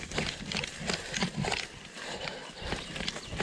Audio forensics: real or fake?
real